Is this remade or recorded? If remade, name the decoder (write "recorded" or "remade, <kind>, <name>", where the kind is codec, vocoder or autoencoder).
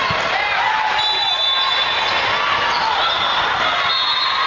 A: recorded